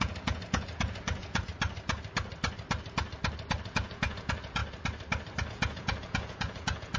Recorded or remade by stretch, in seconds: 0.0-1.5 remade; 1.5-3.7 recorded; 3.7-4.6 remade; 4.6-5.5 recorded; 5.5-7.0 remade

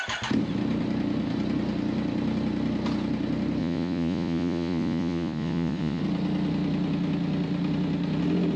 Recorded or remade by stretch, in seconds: 0.0-3.6 recorded; 3.6-6.0 remade; 6.0-8.6 recorded

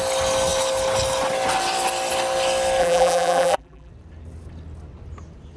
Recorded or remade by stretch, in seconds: 0.0-2.8 recorded; 2.8-3.9 remade; 3.9-5.6 recorded

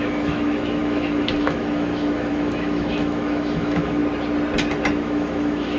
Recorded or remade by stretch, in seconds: 0.0-4.0 remade; 4.0-4.9 recorded; 4.9-5.8 remade

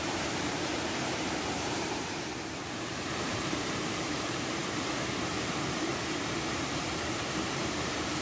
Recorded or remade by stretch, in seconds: 0.0-4.6 remade; 4.6-5.3 recorded; 5.3-5.9 remade; 5.9-7.5 recorded; 7.5-8.2 remade